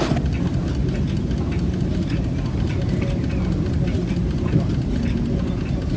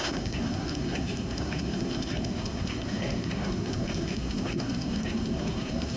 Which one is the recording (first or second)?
first